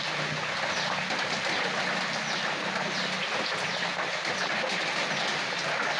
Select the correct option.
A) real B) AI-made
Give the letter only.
A